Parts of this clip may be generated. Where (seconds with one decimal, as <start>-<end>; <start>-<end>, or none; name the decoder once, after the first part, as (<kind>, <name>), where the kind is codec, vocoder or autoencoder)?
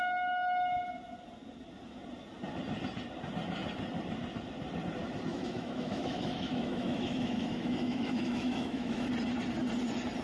5.3-9.1 (autoencoder, DAC-VAE)